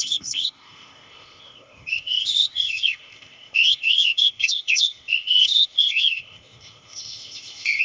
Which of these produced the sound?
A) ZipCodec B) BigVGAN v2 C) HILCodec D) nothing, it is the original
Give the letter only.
A